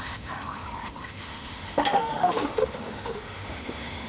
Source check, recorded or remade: remade